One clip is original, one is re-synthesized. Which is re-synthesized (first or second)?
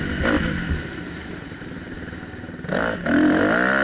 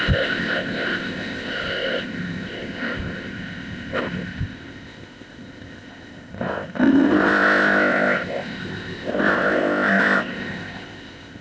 second